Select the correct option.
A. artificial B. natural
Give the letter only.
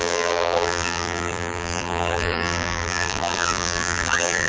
A